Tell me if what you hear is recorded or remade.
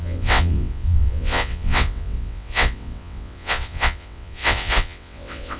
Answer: remade